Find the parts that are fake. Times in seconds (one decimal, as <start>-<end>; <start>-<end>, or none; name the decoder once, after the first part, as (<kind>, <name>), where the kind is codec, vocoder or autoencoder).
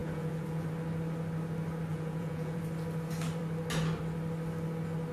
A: 0.0-0.7 (vocoder, Vocos); 1.9-2.6